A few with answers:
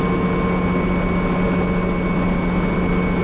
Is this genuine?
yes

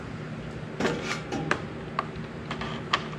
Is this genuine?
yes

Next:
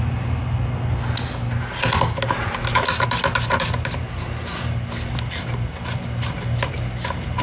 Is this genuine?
yes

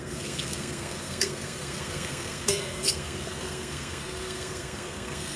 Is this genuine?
no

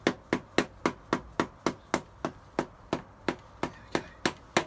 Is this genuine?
yes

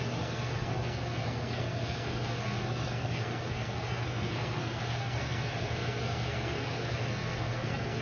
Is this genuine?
no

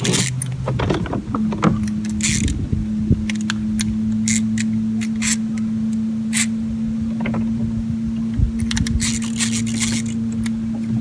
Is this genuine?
yes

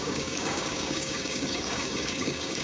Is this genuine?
no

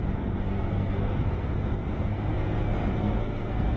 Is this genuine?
no